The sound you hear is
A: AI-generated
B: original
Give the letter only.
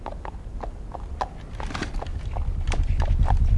B